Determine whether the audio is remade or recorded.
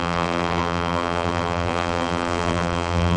remade